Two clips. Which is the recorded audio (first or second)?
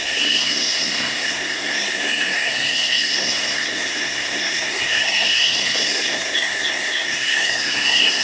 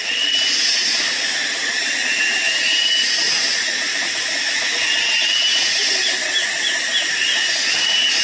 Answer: second